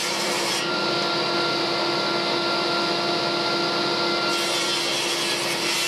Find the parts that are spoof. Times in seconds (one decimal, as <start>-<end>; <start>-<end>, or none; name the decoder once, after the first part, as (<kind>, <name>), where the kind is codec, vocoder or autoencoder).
0.0-1.0 (vocoder, BigVGAN v2)